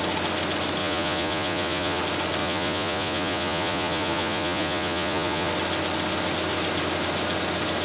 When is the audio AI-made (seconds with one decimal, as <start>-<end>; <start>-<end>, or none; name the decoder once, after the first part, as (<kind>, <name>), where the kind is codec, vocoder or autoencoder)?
0.8-2.0 (vocoder, Vocos); 2.4-5.5